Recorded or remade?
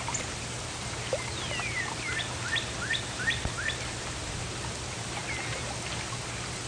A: recorded